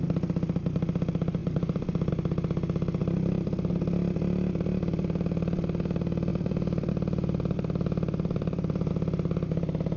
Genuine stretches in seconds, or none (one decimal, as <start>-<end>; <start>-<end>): 0.0-1.4; 2.1-3.0; 3.7-6.3; 8.9-10.0